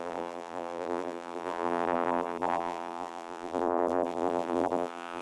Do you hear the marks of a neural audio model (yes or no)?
yes